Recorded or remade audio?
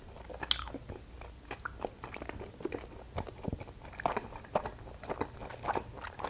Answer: recorded